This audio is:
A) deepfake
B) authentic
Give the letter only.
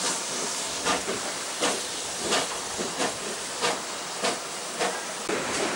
B